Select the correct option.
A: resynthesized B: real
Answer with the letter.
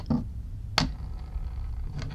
B